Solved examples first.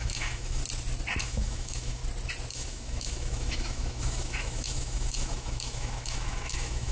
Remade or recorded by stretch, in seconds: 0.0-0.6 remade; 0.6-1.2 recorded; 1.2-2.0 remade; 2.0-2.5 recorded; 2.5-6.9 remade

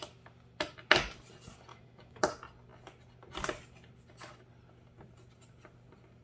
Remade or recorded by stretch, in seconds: 0.0-1.7 recorded; 1.7-2.2 remade; 2.2-6.2 recorded

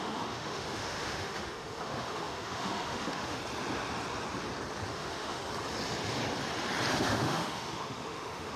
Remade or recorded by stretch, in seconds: 0.0-3.4 remade; 3.4-4.9 recorded; 4.9-5.4 remade; 5.4-6.9 recorded; 6.9-8.6 remade

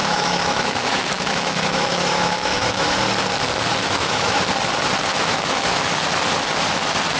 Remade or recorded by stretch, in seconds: 0.0-3.0 remade; 3.0-3.8 recorded; 3.8-4.4 remade; 4.4-5.1 recorded; 5.1-5.8 remade; 5.8-7.2 recorded

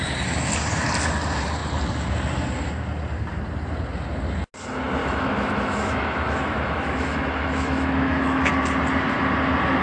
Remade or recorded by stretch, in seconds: 0.0-5.0 recorded; 5.0-8.5 remade; 8.5-9.8 recorded

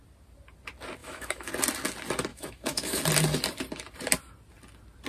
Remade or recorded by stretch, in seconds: 0.0-1.0 recorded; 1.0-1.5 remade; 1.5-2.3 recorded; 2.3-3.0 remade; 3.0-5.1 recorded